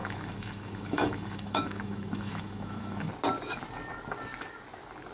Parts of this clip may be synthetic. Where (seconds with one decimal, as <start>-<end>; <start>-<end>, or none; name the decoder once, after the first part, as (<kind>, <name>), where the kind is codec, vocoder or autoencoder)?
0.0-3.1 (autoencoder, DAC-VAE)